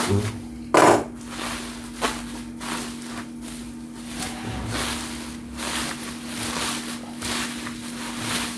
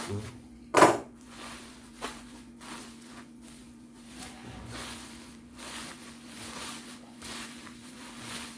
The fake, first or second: second